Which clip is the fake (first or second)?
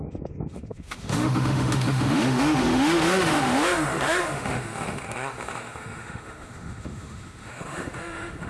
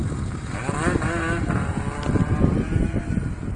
first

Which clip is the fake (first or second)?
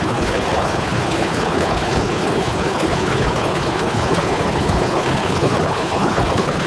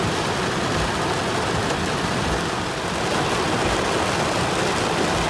first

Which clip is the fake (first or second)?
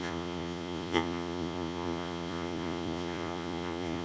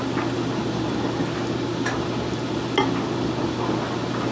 first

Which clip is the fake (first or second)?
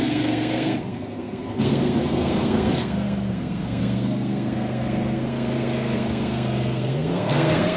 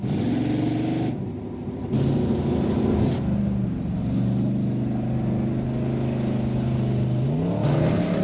first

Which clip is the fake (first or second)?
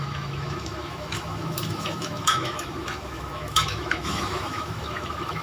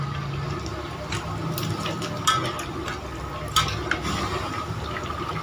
first